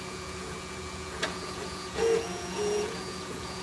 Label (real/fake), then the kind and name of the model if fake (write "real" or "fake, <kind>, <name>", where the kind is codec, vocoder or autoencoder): fake, vocoder, Vocos